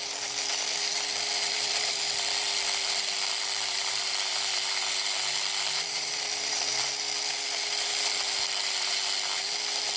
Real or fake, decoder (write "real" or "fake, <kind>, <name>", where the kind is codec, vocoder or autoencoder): fake, vocoder, BigVGAN v2